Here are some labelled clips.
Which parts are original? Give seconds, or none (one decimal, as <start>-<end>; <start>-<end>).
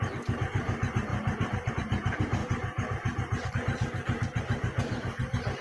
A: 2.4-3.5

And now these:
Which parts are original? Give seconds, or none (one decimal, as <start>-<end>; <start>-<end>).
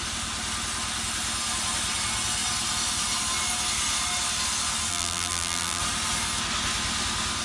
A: 0.0-4.9; 5.8-7.4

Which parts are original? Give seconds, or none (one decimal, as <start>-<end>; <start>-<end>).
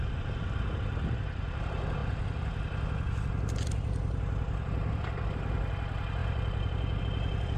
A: 0.0-7.6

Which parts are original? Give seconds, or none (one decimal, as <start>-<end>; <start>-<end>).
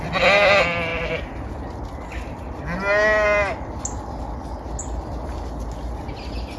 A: 0.0-0.9; 1.5-6.6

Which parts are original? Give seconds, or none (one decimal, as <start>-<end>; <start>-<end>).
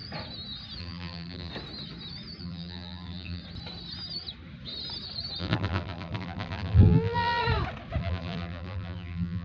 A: 0.0-0.8; 1.5-2.4; 3.4-5.4; 7.4-8.0